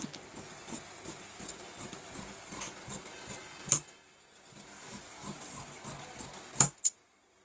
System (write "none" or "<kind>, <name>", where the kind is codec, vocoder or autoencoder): none